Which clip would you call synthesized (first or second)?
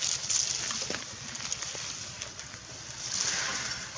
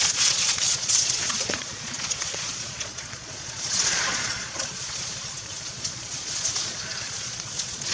second